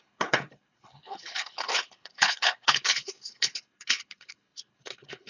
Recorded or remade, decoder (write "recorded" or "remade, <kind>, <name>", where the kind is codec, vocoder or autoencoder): remade, codec, HILCodec